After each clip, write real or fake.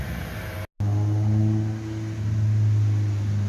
real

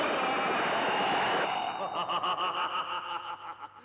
real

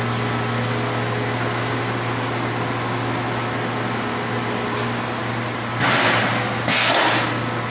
real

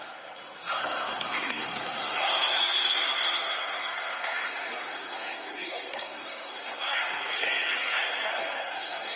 fake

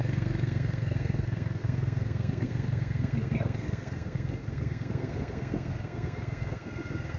fake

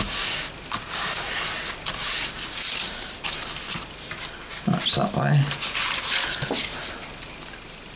real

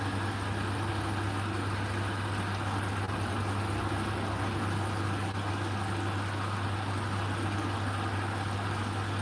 real